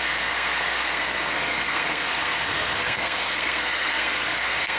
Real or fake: fake